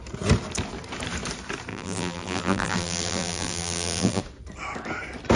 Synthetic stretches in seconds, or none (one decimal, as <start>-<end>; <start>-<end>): 1.7-4.2